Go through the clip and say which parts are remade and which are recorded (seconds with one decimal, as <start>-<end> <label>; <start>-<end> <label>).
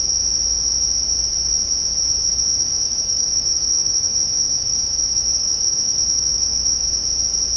0.0-2.3 recorded; 2.3-6.9 remade; 6.9-7.6 recorded